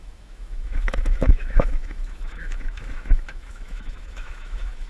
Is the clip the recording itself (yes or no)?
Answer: no